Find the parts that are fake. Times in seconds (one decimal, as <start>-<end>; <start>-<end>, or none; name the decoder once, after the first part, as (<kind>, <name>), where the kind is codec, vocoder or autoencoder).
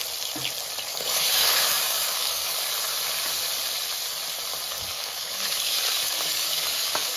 0.9-2.7 (codec, DAC); 4.7-7.2